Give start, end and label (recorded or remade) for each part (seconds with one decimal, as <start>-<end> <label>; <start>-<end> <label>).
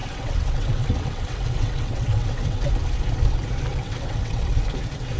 0.0-2.7 remade; 2.7-3.7 recorded; 3.7-4.5 remade; 4.5-5.2 recorded